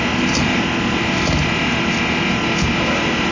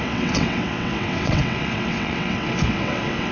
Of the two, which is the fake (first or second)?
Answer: second